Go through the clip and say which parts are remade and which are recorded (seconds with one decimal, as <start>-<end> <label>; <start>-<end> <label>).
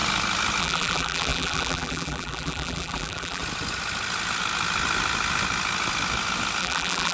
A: 0.0-0.6 recorded; 0.6-3.4 remade; 3.4-6.6 recorded; 6.6-7.1 remade